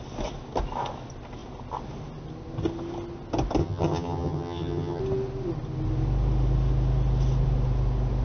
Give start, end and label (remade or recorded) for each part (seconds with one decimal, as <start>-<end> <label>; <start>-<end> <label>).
0.0-3.6 recorded; 3.6-5.0 remade; 5.0-8.2 recorded